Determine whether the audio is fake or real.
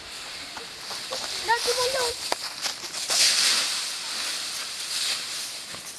real